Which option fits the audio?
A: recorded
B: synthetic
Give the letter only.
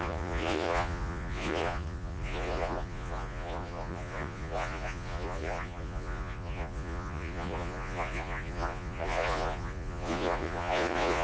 B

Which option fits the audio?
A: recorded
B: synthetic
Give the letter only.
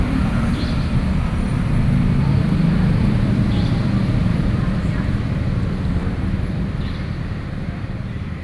B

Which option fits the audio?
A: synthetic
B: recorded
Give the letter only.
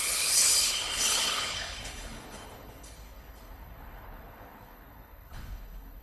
A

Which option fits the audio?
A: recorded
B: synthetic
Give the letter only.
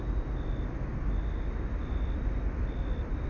A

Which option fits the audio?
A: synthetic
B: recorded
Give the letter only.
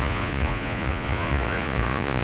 A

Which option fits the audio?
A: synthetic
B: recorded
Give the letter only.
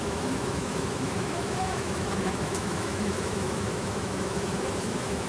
A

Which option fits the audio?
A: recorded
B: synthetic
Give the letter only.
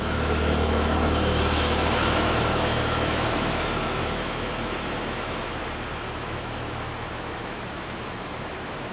B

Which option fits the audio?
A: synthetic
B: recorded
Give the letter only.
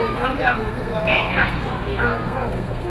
A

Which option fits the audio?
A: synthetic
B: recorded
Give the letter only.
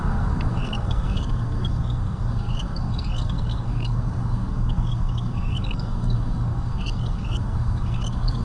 A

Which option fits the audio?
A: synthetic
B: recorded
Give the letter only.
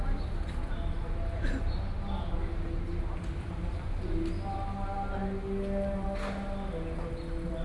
B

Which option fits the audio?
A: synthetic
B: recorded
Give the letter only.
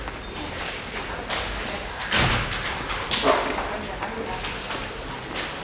B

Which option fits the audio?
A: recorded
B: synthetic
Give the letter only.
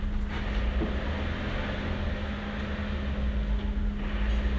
A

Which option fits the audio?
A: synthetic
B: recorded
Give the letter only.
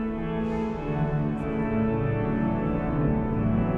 B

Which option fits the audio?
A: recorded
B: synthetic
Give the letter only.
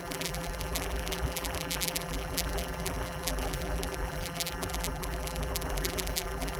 B